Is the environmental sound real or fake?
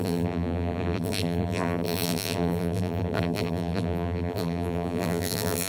fake